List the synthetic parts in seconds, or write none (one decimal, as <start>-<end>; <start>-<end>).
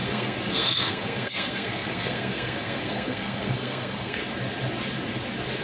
0.0-4.2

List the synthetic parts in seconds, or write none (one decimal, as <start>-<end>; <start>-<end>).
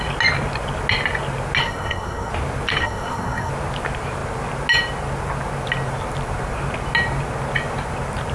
1.6-2.3; 2.8-3.5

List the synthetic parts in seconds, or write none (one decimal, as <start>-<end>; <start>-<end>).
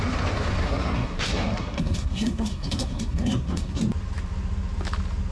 0.6-3.8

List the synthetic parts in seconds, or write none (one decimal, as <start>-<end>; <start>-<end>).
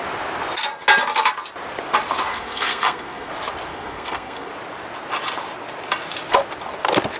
2.3-3.3; 3.7-4.5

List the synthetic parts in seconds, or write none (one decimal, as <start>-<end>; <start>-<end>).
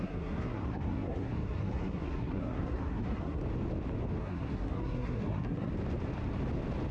0.0-3.4; 4.2-5.7